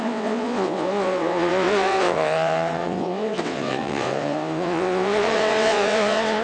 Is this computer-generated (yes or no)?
yes